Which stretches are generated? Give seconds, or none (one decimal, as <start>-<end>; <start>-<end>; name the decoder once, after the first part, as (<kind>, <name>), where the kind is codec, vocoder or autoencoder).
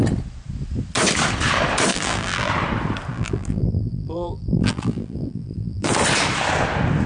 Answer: 1.9-2.5 (vocoder, BigVGAN v2); 3.1-5.9